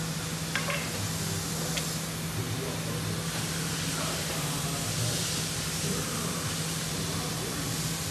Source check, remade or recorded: recorded